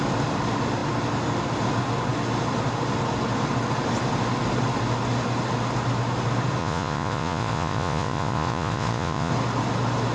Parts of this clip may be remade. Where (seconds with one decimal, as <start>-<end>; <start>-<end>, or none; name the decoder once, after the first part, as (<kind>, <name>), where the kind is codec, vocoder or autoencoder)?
6.6-9.3 (vocoder, Vocos)